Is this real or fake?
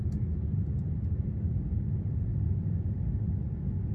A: real